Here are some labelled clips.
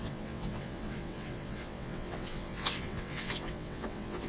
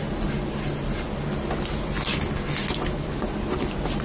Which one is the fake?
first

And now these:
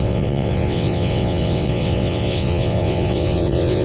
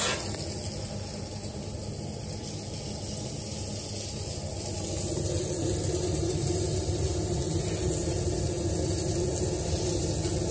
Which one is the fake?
first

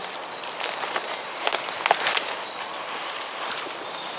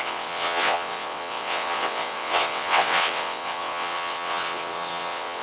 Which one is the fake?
second